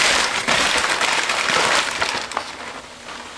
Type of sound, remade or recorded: recorded